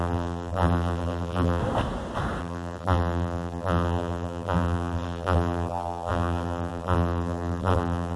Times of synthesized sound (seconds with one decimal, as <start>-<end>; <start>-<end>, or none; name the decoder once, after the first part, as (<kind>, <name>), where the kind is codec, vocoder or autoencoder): 0.0-1.6 (vocoder, BigVGAN v2); 2.4-8.2